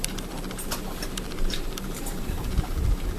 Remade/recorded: remade